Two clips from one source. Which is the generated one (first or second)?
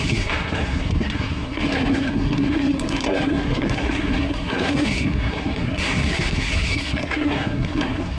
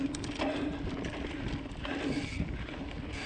first